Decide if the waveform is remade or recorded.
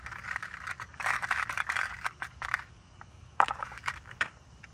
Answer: remade